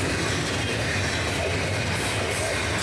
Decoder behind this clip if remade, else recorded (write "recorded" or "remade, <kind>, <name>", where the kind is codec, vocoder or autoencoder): recorded